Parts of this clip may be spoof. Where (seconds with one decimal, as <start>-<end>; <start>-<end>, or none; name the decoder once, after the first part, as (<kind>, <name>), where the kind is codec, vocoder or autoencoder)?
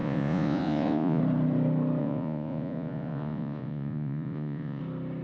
0.0-1.2 (vocoder, Vocos); 2.0-4.8